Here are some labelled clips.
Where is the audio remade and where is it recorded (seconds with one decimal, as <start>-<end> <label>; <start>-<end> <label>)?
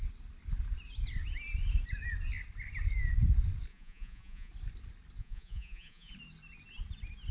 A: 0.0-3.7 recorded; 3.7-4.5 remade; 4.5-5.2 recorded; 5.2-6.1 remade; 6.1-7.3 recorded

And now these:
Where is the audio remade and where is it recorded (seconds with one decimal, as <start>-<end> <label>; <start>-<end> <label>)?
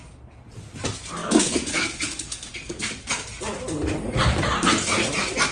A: 0.0-1.2 recorded; 1.2-3.1 remade; 3.1-5.5 recorded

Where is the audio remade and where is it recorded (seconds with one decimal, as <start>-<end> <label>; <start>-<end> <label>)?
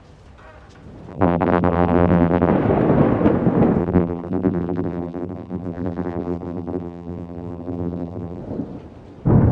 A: 0.0-1.1 recorded; 1.1-2.5 remade; 2.5-3.8 recorded; 3.8-8.4 remade; 8.4-9.5 recorded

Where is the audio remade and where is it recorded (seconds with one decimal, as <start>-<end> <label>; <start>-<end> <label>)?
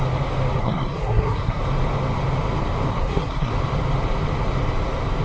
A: 0.0-0.6 recorded; 0.6-1.6 remade; 1.6-2.9 recorded; 2.9-3.5 remade; 3.5-5.2 recorded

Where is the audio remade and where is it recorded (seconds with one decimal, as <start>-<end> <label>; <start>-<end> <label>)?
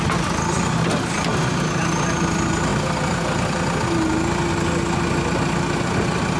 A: 0.0-6.4 recorded